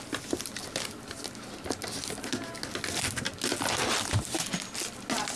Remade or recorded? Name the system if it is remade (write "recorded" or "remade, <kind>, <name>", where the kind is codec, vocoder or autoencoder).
recorded